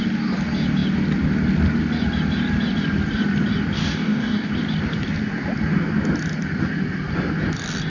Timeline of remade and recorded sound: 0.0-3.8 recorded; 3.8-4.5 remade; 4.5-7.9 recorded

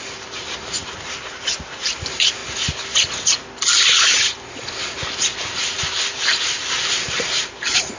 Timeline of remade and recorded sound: 0.0-0.8 remade; 0.8-1.8 recorded; 1.8-2.4 remade; 2.4-5.8 recorded; 5.8-8.0 remade